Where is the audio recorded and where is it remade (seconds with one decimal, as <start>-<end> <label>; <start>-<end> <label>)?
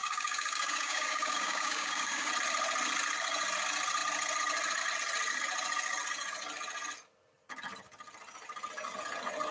0.0-2.3 remade; 2.3-9.5 recorded